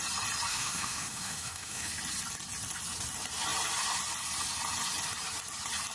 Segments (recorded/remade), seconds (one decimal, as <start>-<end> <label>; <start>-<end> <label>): 0.0-0.5 recorded; 0.5-1.9 remade; 1.9-5.9 recorded

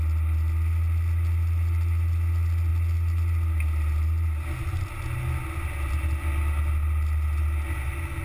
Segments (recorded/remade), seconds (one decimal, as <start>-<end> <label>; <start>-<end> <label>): 0.0-8.2 recorded

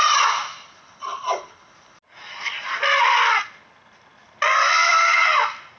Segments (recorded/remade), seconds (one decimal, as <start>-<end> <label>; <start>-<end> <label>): 0.0-5.8 recorded

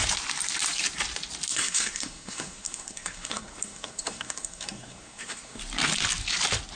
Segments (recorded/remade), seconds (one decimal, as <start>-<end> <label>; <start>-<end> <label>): 0.0-1.5 recorded; 1.5-5.6 remade; 5.6-6.8 recorded

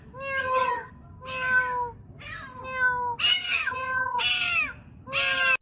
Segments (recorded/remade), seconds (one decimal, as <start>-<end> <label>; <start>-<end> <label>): 0.0-0.4 recorded; 0.4-0.9 remade; 0.9-3.3 recorded; 3.3-4.2 remade; 4.2-5.6 recorded

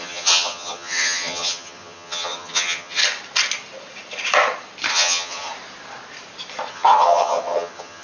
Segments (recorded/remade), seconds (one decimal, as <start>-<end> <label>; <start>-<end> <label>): 0.0-3.0 remade; 3.0-4.9 recorded; 4.9-5.5 remade; 5.5-6.7 recorded; 6.7-8.0 remade

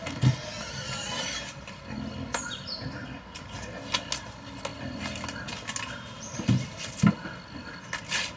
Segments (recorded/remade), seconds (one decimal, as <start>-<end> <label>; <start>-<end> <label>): 0.0-8.4 recorded